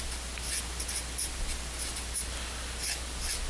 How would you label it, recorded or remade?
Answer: recorded